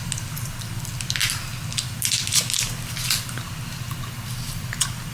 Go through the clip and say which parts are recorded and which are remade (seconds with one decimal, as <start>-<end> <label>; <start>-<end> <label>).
0.0-5.1 recorded